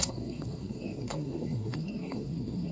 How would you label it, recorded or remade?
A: remade